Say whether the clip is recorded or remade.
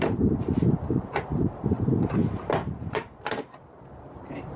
remade